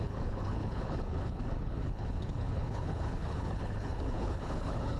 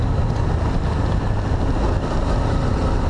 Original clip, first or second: second